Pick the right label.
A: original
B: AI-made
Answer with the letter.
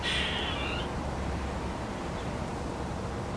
A